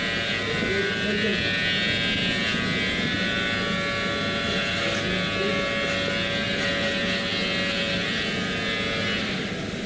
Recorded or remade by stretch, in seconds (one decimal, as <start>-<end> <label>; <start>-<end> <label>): 0.0-9.9 recorded